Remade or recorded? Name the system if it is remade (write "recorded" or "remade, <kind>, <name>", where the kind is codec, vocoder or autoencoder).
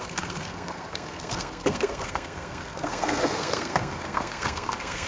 remade, codec, SNAC